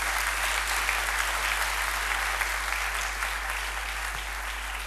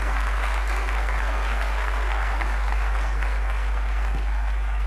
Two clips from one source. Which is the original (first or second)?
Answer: first